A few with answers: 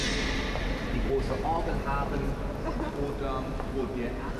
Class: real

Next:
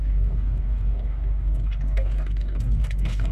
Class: fake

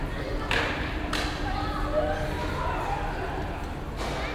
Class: real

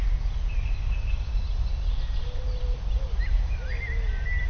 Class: real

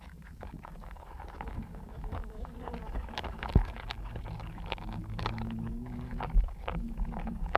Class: fake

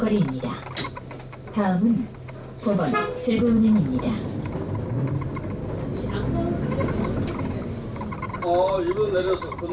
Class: real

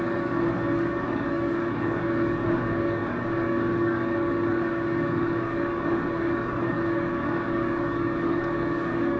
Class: fake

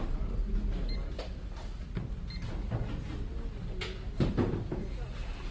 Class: real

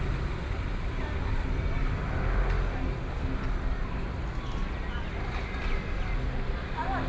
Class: real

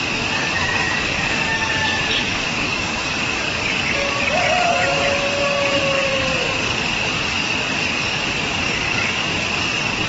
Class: fake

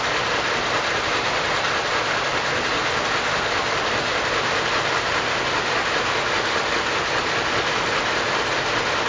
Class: real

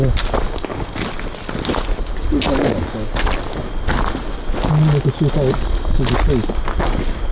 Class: real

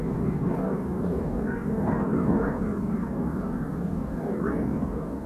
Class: fake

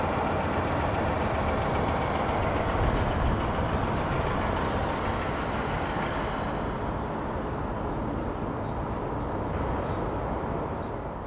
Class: real